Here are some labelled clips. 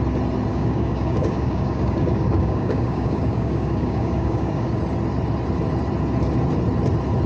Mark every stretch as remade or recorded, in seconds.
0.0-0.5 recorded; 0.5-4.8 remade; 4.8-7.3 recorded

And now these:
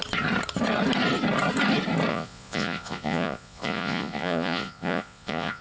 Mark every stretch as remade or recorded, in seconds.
0.0-2.1 recorded; 2.1-5.6 remade

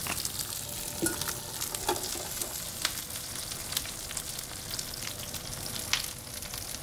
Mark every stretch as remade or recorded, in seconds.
0.0-6.8 recorded

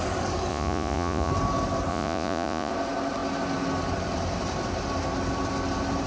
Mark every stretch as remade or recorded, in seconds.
0.0-0.5 recorded; 0.5-1.3 remade; 1.3-1.9 recorded; 1.9-2.7 remade; 2.7-6.1 recorded

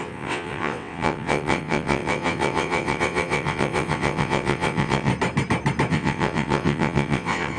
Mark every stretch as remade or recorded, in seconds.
0.0-5.1 remade; 5.1-5.9 recorded; 5.9-7.6 remade